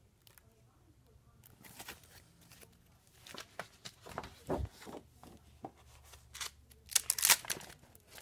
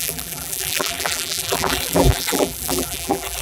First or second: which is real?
first